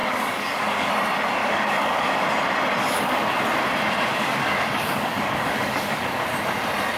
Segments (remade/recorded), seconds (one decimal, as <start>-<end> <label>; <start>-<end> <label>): 0.0-0.9 remade; 0.9-1.4 recorded; 1.4-2.1 remade; 2.1-2.8 recorded; 2.8-3.4 remade; 3.4-4.1 recorded; 4.1-6.2 remade; 6.2-7.0 recorded